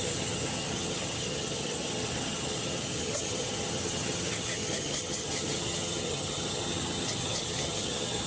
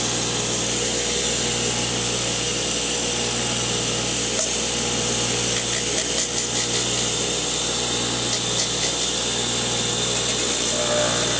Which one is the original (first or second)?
second